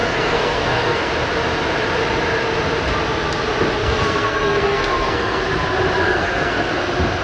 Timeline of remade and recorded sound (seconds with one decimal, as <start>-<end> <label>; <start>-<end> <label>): 0.0-1.1 remade; 1.1-3.8 recorded; 3.8-5.4 remade; 5.4-6.0 recorded; 6.0-6.7 remade; 6.7-7.2 recorded

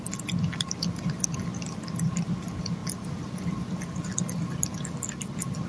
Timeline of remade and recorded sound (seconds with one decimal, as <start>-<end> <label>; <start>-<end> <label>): 0.0-5.7 recorded

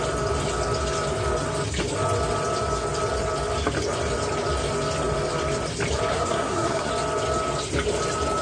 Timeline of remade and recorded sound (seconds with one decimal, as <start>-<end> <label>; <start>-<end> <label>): 0.0-6.1 recorded; 6.1-6.9 remade; 6.9-8.4 recorded

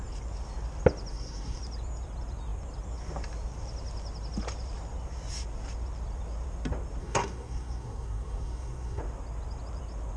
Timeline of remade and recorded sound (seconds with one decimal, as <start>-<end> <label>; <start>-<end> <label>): 0.0-1.1 recorded; 1.1-1.6 remade; 1.6-7.0 recorded; 7.0-9.0 remade; 9.0-10.2 recorded

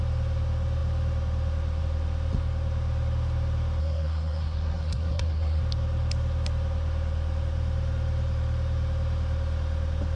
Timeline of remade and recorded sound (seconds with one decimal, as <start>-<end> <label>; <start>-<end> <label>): 0.0-3.8 recorded; 3.8-5.6 remade; 5.6-10.2 recorded

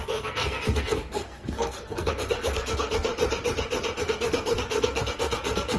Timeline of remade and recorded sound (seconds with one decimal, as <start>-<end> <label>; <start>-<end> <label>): 0.0-3.1 remade; 3.1-4.0 recorded; 4.0-5.8 remade

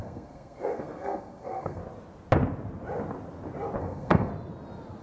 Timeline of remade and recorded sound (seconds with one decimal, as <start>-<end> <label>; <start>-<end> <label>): 0.0-1.8 remade; 1.8-3.8 recorded; 3.8-4.3 remade; 4.3-5.0 recorded

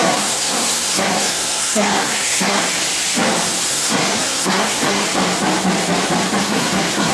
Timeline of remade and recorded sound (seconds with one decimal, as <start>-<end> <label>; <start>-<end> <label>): 0.0-2.6 remade; 2.6-3.7 recorded; 3.7-5.0 remade; 5.0-6.4 recorded; 6.4-7.1 remade